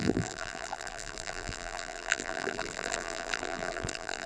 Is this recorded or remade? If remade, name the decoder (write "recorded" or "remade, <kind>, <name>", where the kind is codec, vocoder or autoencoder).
remade, vocoder, BigVGAN v2